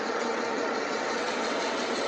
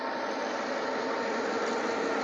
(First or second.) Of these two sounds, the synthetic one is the first